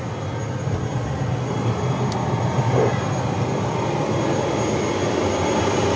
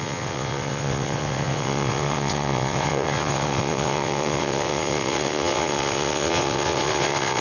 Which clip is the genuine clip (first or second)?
first